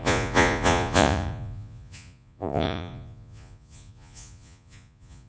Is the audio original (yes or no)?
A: no